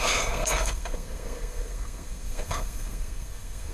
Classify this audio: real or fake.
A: fake